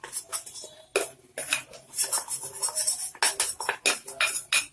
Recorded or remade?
recorded